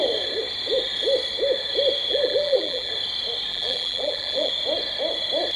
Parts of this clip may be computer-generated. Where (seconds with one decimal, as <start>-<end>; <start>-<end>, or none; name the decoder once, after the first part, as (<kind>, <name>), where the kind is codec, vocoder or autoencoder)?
2.1-2.9 (vocoder, BigVGAN v2); 3.5-4.5